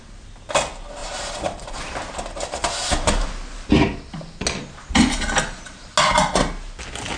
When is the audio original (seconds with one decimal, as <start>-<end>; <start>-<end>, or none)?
0.0-1.0; 1.7-2.6; 3.3-7.2